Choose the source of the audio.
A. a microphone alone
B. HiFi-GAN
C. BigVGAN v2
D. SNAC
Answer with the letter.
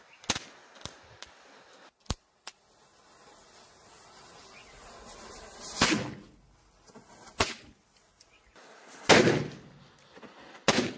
A